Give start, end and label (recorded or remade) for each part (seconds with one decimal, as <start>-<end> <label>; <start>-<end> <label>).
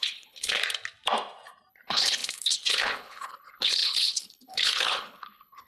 0.0-0.6 remade; 0.6-1.7 recorded; 1.7-5.7 remade